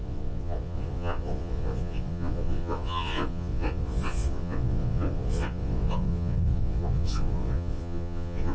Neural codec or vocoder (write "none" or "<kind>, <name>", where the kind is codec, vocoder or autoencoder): vocoder, Vocos